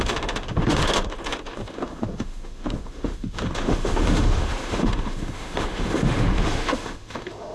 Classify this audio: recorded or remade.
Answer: remade